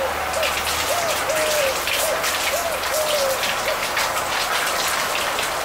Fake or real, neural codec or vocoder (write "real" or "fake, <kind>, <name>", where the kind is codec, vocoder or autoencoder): real